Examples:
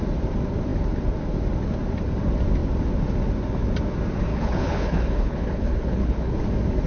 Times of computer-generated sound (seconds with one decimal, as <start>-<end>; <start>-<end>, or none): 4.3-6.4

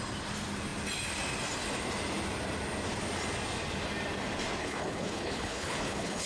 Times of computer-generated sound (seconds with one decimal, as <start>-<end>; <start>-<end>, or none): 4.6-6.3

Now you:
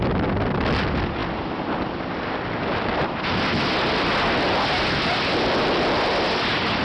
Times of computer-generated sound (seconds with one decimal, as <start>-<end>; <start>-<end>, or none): none

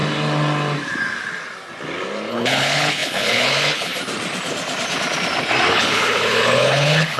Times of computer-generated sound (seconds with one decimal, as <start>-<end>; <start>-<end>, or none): 2.3-3.9; 5.7-7.2